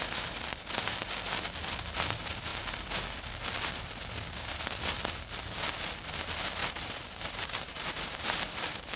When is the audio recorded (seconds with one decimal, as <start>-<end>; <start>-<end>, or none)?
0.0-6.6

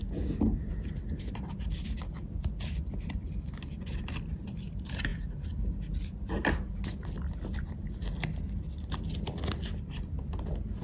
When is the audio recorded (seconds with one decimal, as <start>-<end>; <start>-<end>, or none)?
0.0-10.8

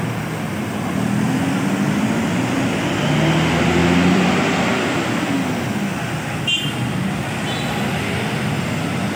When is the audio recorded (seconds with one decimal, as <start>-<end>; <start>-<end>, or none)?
0.0-3.8; 4.3-9.2